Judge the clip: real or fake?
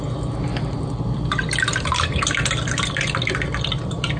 real